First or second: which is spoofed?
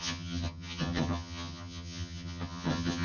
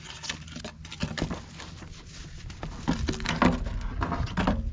first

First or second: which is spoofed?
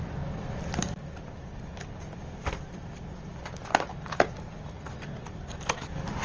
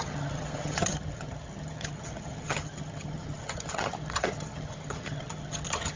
second